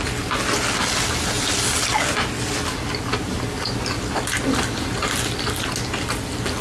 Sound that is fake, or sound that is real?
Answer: real